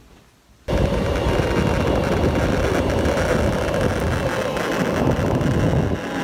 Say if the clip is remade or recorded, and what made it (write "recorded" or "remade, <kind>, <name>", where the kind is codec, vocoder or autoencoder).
recorded